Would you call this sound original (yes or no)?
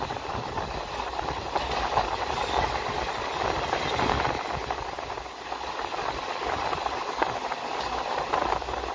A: yes